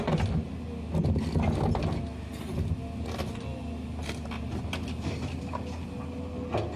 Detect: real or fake real